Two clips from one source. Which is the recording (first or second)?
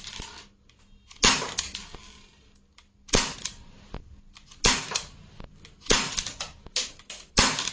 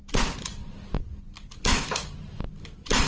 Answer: first